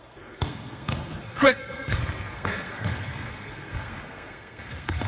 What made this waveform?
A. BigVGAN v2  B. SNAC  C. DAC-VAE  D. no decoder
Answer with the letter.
B